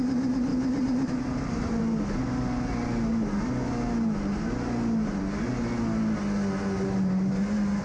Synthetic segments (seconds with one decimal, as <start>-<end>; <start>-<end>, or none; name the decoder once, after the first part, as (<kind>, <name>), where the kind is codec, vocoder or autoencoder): 0.5-1.8 (vocoder, BigVGAN v2)